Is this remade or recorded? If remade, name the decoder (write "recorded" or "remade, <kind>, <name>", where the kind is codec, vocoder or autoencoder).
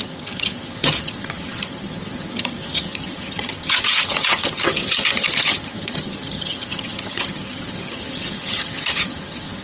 remade, vocoder, HiFi-GAN